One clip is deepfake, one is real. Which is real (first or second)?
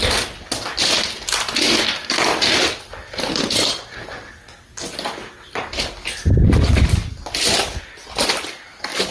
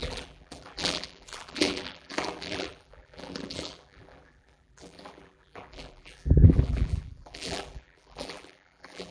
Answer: first